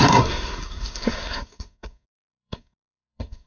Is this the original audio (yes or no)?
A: no